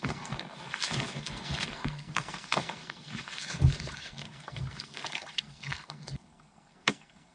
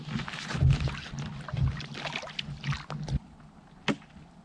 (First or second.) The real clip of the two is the second